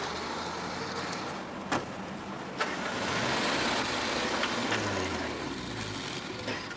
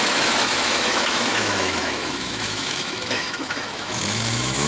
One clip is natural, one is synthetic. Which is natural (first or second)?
first